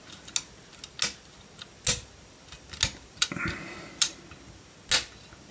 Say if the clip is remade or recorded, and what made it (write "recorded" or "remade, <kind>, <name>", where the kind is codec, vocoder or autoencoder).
recorded